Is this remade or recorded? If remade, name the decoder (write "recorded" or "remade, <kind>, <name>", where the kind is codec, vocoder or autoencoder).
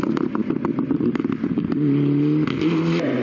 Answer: recorded